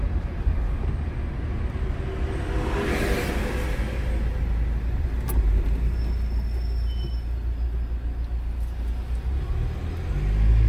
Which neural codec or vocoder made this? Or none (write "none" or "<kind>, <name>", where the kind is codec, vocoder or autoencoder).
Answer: none